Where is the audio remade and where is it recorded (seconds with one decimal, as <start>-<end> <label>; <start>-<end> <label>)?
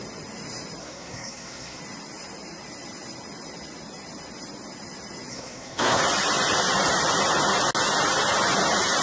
0.0-0.8 recorded; 0.8-1.8 remade; 1.8-5.3 recorded; 5.3-6.0 remade; 6.0-9.0 recorded